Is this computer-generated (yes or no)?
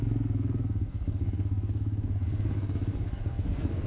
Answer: yes